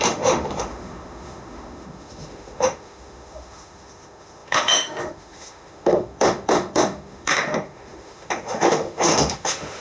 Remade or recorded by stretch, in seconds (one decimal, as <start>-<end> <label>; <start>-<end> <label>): 0.0-9.8 remade